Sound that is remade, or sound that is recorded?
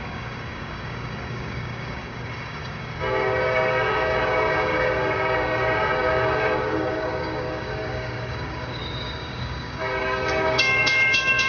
remade